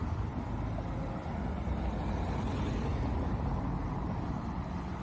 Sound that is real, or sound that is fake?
real